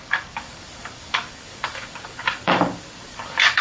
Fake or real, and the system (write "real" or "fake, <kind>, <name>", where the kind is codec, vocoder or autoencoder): fake, codec, DAC